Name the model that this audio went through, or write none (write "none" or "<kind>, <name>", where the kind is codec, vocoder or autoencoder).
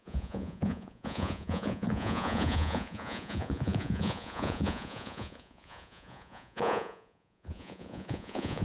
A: vocoder, Vocos